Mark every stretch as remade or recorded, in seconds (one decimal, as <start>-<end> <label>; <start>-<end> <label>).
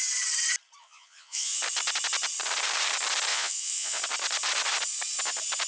0.0-0.8 recorded; 0.8-1.6 remade; 1.6-3.3 recorded; 3.3-4.0 remade; 4.0-5.7 recorded